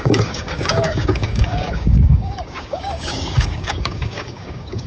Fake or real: fake